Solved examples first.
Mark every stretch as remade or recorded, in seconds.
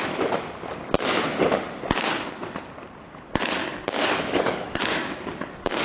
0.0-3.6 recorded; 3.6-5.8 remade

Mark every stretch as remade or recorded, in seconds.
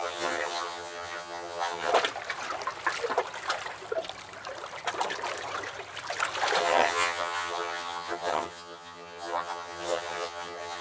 0.0-1.9 remade; 1.9-6.6 recorded; 6.6-10.8 remade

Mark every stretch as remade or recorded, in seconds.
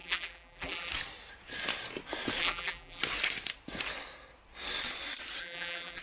0.0-0.9 remade; 0.9-2.4 recorded; 2.4-3.0 remade; 3.0-5.4 recorded; 5.4-6.0 remade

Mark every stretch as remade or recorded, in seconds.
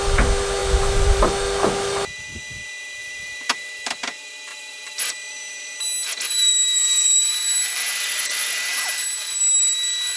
0.0-0.6 recorded; 0.6-1.3 remade; 1.3-3.0 recorded; 3.0-3.9 remade; 3.9-4.5 recorded; 4.5-9.4 remade; 9.4-10.2 recorded